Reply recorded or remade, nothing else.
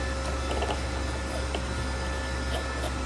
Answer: recorded